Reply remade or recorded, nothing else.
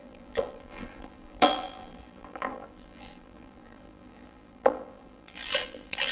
remade